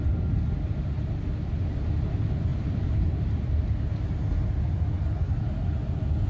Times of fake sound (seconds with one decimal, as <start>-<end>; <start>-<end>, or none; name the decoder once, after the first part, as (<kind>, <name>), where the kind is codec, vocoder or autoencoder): 2.5-3.5 (vocoder, BigVGAN v2)